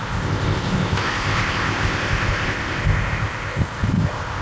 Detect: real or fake fake